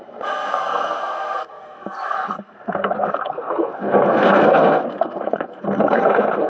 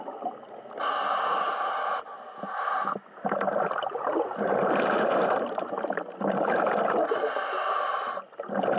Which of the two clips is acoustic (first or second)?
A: second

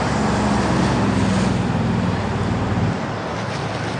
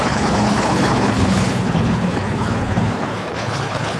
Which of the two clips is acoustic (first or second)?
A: first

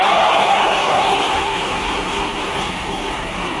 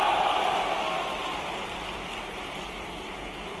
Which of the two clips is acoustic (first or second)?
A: second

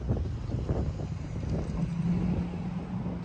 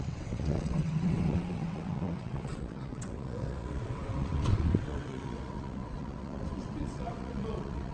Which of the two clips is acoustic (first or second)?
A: first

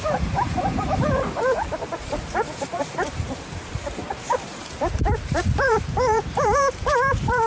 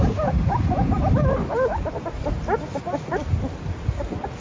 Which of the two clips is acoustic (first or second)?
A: second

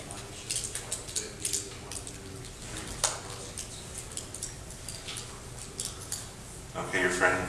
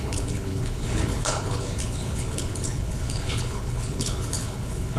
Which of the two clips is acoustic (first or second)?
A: first